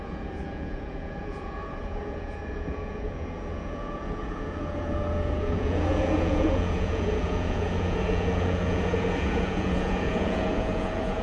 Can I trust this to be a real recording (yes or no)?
no